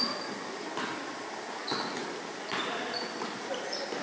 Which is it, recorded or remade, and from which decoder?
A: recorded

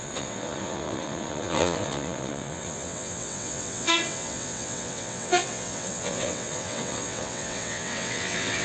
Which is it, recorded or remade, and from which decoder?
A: remade, vocoder, WaveNeXt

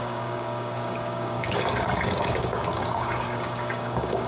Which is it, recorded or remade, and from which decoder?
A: remade, codec, DAC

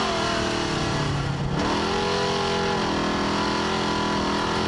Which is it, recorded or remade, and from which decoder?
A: recorded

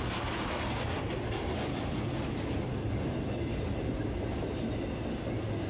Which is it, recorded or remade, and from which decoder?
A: recorded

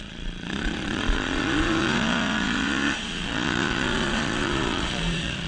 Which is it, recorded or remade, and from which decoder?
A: remade, vocoder, Vocos